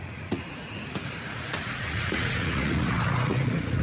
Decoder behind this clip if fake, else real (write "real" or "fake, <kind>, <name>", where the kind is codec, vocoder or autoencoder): fake, vocoder, Vocos